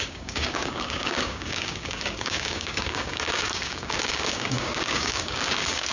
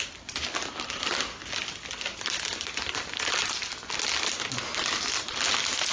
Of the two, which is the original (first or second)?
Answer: second